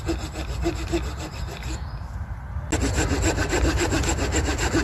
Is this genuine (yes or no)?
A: yes